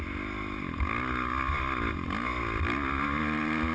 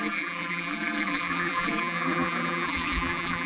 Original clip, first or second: first